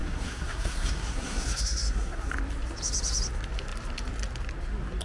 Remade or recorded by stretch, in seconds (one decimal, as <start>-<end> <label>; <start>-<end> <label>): 0.0-2.3 remade; 2.3-5.0 recorded